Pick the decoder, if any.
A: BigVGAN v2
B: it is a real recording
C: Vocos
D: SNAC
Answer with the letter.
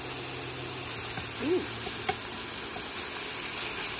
B